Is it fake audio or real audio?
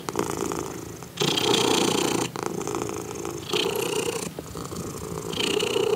real